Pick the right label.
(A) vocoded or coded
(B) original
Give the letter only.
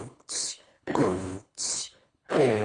A